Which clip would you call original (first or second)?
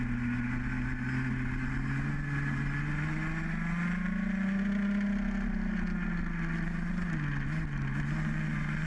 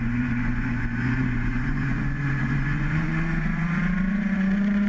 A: first